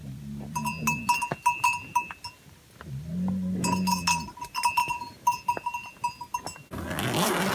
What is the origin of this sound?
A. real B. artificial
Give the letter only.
A